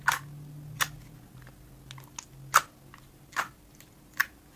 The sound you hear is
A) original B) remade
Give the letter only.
A